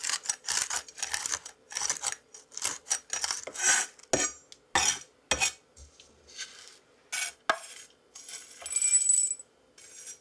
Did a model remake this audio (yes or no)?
no